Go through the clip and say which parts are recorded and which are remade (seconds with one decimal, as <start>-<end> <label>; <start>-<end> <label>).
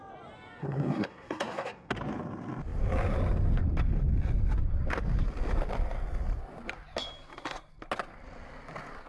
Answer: 0.0-0.6 recorded; 0.6-1.9 remade; 1.9-9.1 recorded